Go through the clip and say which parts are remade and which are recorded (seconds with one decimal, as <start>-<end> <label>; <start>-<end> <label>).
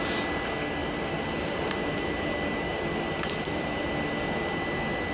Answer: 0.0-0.8 recorded; 0.8-2.3 remade; 2.3-2.7 recorded; 2.7-3.6 remade; 3.6-5.1 recorded